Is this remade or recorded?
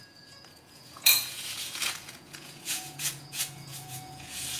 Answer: remade